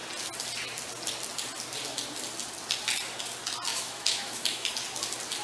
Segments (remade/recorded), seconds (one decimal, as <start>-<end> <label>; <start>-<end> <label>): 0.0-3.7 recorded; 3.7-4.7 remade; 4.7-5.4 recorded